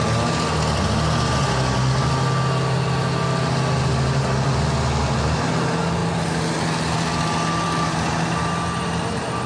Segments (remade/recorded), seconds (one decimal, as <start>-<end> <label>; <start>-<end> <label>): 0.0-9.5 recorded